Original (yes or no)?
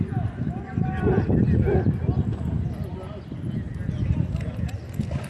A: yes